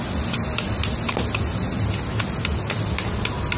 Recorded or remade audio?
recorded